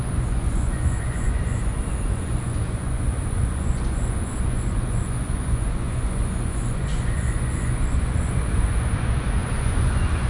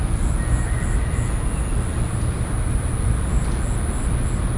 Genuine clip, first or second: second